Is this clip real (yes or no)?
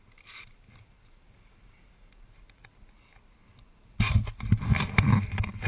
yes